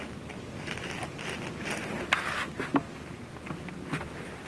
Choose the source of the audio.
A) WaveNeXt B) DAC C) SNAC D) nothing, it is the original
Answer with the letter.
D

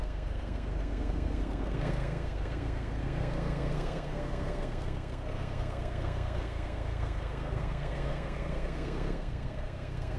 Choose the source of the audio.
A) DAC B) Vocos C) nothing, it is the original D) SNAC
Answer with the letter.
D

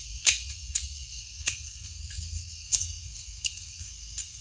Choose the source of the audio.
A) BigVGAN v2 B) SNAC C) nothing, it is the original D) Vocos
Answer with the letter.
B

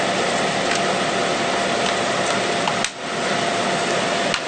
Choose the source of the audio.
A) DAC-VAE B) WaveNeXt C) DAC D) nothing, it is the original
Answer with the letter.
D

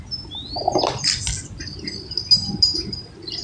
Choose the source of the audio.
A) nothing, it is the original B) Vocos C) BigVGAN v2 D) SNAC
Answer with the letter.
A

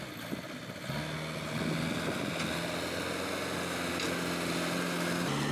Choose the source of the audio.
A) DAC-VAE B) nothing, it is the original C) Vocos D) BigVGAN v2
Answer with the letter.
B